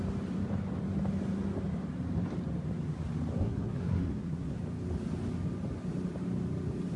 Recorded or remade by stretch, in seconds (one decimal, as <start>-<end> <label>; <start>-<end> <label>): 0.0-3.3 recorded; 3.3-4.6 remade; 4.6-7.0 recorded